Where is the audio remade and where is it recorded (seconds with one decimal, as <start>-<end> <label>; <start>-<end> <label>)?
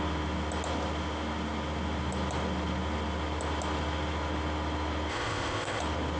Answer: 0.0-5.1 recorded; 5.1-5.8 remade; 5.8-6.2 recorded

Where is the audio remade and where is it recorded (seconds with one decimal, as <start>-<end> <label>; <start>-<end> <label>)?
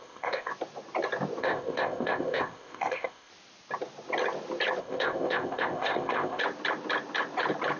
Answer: 0.0-0.5 remade; 0.5-1.4 recorded; 1.4-3.3 remade; 3.3-4.8 recorded; 4.8-6.4 remade; 6.4-7.8 recorded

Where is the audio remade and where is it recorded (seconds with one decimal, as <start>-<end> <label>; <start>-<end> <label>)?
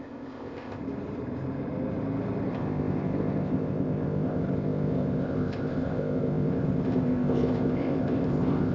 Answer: 0.0-0.8 remade; 0.8-2.5 recorded; 2.5-8.7 remade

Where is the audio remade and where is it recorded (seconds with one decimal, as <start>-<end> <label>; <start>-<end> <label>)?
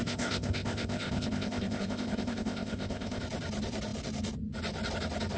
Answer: 0.0-3.2 remade; 3.2-5.4 recorded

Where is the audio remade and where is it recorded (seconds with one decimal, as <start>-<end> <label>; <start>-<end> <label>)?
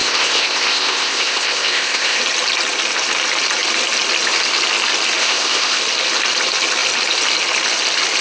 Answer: 0.0-2.2 remade; 2.2-5.2 recorded; 5.2-5.8 remade; 5.8-8.2 recorded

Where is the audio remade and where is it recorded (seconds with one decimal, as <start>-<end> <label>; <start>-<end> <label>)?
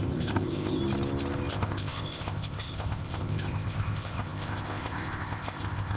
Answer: 0.0-0.8 remade; 0.8-1.5 recorded; 1.5-6.0 remade